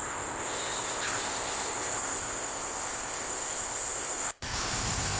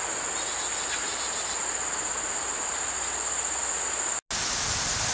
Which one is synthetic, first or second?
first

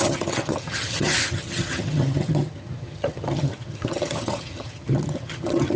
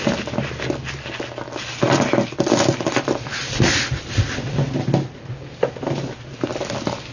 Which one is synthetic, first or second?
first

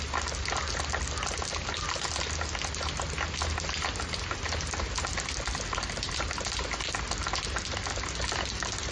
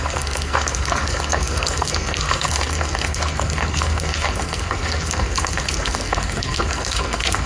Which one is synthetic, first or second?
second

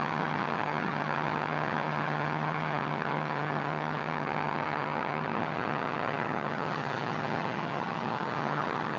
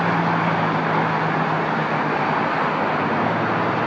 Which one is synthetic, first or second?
first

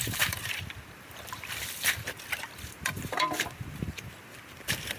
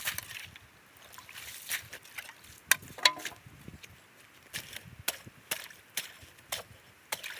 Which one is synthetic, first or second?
first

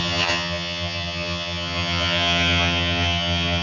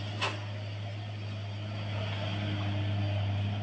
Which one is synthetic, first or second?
first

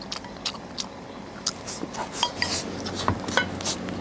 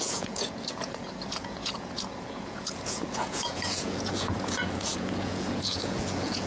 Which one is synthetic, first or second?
second